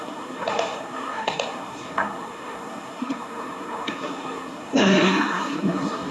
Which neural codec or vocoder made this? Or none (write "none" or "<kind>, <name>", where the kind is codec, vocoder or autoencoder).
codec, SNAC